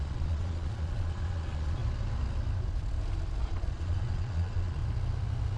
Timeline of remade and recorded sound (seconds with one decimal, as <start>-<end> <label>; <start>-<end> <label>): 0.0-1.8 remade; 1.8-3.4 recorded; 3.4-4.8 remade; 4.8-5.6 recorded